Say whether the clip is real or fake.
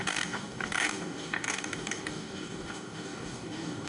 fake